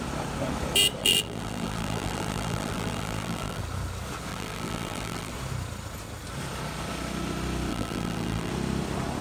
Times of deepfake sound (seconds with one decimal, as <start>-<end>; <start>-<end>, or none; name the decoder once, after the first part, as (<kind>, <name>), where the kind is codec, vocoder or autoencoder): 1.0-3.6 (vocoder, BigVGAN v2); 4.3-5.3; 7.7-8.5